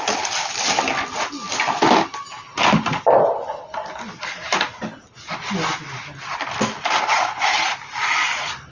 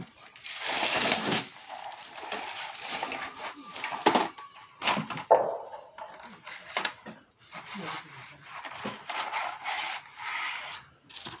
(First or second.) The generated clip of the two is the second